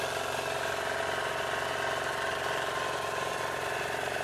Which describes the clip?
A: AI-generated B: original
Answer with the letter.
B